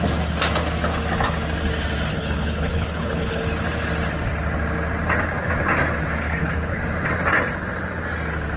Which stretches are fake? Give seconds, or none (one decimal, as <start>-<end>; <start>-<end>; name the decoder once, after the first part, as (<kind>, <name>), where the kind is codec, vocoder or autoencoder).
2.1-3.4 (codec, HILCodec); 6.2-6.8